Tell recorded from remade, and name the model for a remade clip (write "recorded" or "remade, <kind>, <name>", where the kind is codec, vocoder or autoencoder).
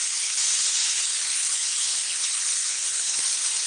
remade, codec, HILCodec